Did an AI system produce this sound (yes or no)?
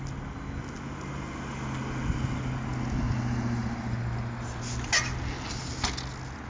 no